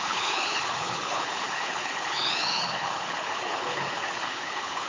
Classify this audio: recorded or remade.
remade